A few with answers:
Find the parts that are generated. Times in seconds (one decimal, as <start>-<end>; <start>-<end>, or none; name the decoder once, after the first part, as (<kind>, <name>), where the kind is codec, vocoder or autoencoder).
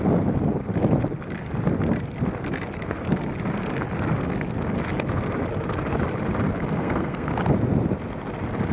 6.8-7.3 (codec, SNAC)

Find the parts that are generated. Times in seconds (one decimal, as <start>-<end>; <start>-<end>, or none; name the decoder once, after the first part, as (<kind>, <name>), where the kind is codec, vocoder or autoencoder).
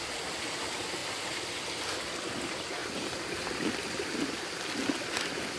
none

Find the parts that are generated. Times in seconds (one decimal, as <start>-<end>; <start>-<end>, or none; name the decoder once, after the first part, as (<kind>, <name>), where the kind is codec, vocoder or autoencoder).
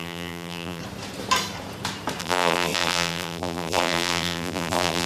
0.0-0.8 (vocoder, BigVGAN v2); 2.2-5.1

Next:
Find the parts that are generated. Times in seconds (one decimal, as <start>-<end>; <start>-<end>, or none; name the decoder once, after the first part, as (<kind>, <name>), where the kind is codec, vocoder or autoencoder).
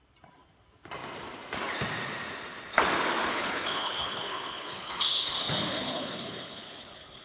3.3-7.2 (codec, HILCodec)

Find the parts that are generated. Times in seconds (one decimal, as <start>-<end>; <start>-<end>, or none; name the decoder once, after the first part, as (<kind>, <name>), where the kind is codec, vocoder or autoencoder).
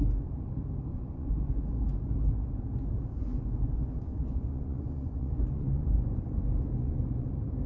0.9-1.4 (vocoder, Vocos); 3.2-7.3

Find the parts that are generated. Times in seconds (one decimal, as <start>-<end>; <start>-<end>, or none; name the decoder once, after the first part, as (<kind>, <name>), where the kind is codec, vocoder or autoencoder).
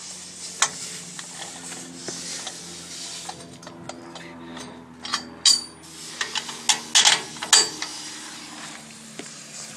7.9-9.8 (vocoder, BigVGAN v2)